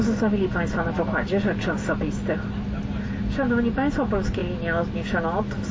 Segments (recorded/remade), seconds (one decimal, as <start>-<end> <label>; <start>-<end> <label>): 0.0-5.7 recorded